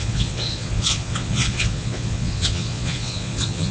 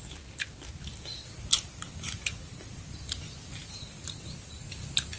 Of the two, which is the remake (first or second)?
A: first